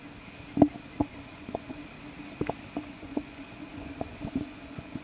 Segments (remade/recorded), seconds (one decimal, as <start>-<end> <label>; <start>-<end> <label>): 0.0-1.1 recorded; 1.1-1.8 remade; 1.8-2.8 recorded; 2.8-5.0 remade